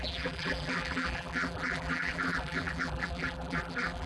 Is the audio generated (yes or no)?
yes